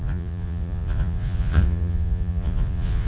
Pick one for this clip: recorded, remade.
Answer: remade